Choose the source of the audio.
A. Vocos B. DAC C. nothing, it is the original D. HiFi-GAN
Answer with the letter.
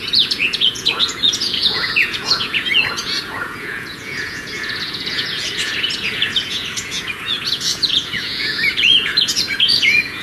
A